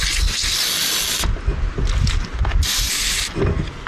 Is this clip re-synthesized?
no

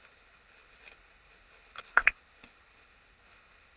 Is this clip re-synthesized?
yes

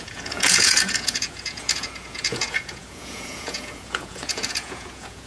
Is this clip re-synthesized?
yes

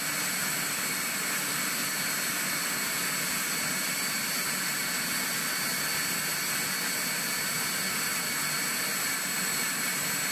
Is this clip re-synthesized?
no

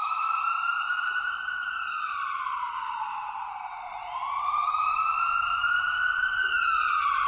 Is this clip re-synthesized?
yes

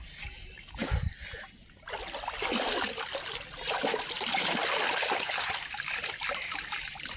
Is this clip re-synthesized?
no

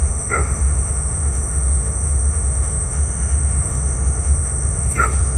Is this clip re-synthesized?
yes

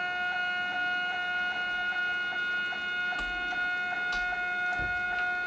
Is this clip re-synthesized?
no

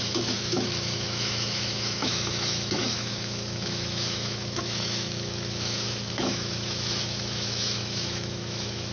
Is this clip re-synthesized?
yes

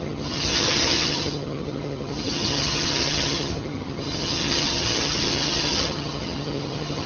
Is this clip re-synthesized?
yes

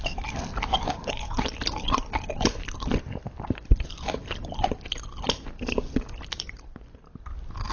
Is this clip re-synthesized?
no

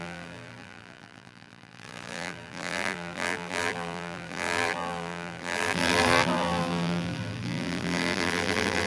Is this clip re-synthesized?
yes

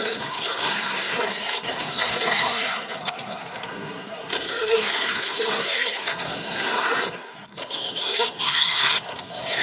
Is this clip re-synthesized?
yes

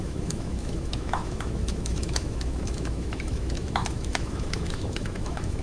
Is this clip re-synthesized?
yes